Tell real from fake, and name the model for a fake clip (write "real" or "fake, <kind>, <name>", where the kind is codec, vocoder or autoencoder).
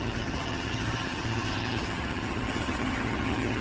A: fake, vocoder, HiFi-GAN